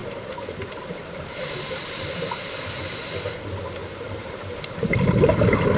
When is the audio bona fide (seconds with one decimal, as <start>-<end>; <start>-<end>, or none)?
0.7-3.8; 4.9-5.8